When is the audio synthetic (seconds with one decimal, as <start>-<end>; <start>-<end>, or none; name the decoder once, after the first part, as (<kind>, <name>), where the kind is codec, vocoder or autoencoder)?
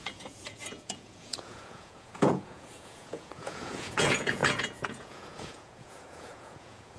0.0-7.0 (vocoder, Vocos)